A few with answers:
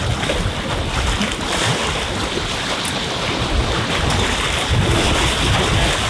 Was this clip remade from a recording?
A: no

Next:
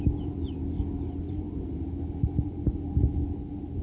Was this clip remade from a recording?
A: no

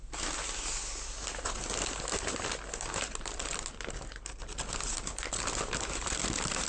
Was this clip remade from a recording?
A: no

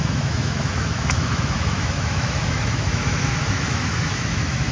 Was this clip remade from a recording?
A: yes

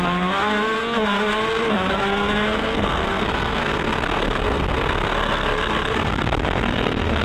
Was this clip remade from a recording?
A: yes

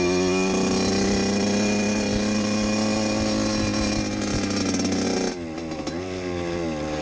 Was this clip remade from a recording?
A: no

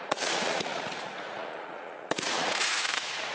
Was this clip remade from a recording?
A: yes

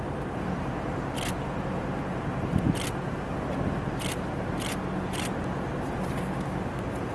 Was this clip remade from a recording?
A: no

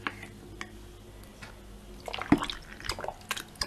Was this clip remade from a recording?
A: no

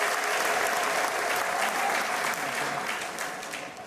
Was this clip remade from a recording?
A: yes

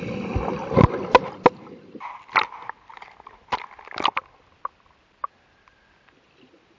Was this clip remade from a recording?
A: no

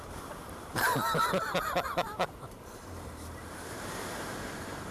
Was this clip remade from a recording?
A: yes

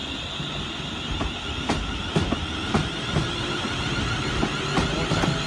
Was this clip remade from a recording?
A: no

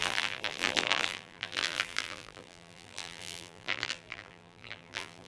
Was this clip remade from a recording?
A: yes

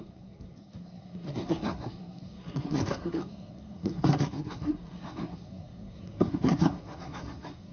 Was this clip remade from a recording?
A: yes